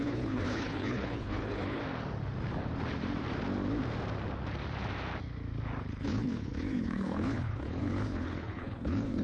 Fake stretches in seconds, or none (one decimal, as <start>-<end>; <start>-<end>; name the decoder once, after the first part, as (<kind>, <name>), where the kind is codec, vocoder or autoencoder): 0.0-1.8 (codec, HILCodec); 5.8-9.2